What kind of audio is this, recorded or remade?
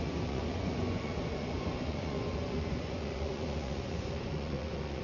remade